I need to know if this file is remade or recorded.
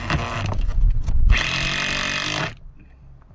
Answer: recorded